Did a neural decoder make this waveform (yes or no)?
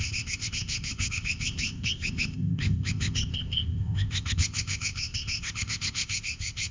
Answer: yes